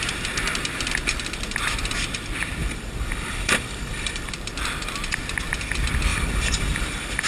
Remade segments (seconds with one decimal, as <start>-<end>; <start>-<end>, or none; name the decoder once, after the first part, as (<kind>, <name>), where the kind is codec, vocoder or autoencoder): 2.6-4.3 (vocoder, BigVGAN v2); 6.1-7.3